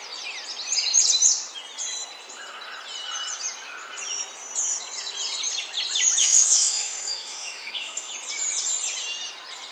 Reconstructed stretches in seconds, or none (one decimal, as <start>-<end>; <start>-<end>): 6.2-8.1